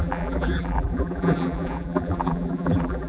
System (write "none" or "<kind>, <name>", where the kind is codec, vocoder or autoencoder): vocoder, BigVGAN v2